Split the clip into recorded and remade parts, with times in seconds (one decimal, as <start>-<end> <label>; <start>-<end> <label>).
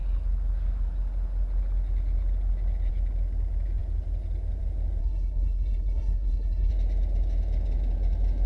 0.0-5.0 recorded; 5.0-6.7 remade; 6.7-8.5 recorded